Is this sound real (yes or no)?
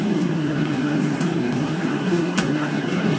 no